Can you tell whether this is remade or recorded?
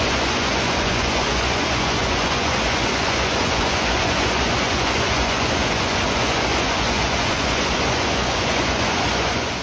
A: remade